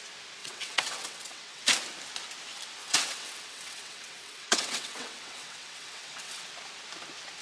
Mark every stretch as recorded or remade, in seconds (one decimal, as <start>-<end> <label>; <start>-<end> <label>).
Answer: 0.0-0.4 recorded; 0.4-1.6 remade; 1.6-2.8 recorded; 2.8-6.5 remade; 6.5-7.4 recorded

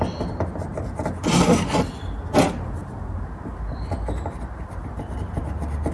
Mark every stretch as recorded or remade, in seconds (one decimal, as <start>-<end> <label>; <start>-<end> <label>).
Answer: 0.0-5.9 recorded

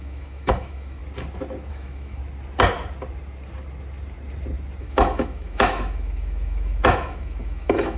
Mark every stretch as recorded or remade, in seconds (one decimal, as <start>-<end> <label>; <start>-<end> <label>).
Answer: 0.0-1.0 remade; 1.0-1.7 recorded; 1.7-2.2 remade; 2.2-4.8 recorded; 4.8-8.0 remade

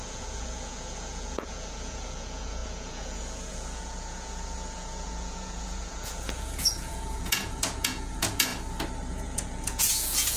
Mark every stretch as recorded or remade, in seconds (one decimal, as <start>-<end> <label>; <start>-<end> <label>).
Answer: 0.0-8.5 remade; 8.5-9.1 recorded; 9.1-10.4 remade

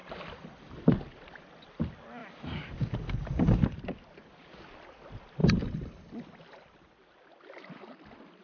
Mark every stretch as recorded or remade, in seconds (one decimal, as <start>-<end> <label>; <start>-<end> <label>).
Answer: 0.0-0.8 remade; 0.8-2.2 recorded; 2.2-3.8 remade; 3.8-5.4 recorded; 5.4-6.9 remade; 6.9-8.4 recorded

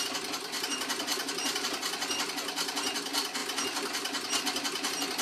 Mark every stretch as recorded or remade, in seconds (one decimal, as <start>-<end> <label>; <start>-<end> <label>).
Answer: 0.0-5.2 recorded

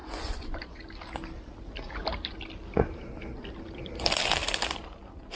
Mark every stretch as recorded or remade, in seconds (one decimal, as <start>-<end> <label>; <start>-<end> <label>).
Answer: 0.0-0.8 remade; 0.8-5.4 recorded